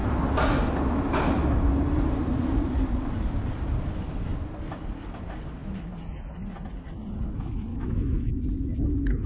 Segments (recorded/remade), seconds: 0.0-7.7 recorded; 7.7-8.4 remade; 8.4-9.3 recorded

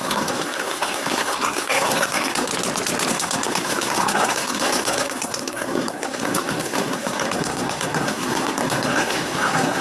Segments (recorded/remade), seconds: 0.0-2.5 remade; 2.5-3.1 recorded; 3.1-9.8 remade

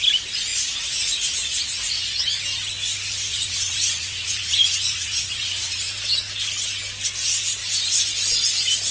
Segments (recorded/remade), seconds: 0.0-0.5 recorded; 0.5-2.4 remade; 2.4-3.3 recorded; 3.3-5.9 remade; 5.9-8.9 recorded

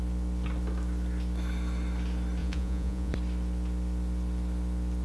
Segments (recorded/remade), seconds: 0.0-2.4 recorded; 2.4-3.1 remade; 3.1-5.0 recorded

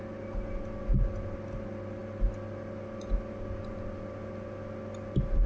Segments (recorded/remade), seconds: 0.0-5.5 recorded

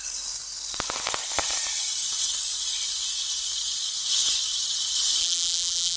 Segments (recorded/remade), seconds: 0.0-5.2 recorded; 5.2-6.0 remade

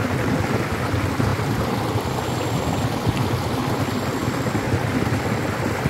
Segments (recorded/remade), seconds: 0.0-5.9 recorded